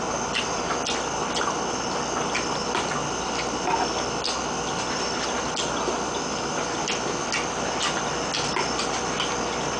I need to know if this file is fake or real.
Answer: real